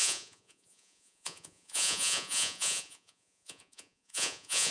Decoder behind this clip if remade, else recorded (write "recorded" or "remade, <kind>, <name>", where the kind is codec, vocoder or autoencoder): remade, vocoder, Vocos